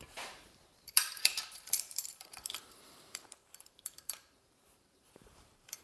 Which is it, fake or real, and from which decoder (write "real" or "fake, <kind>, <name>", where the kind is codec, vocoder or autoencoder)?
fake, vocoder, BigVGAN v2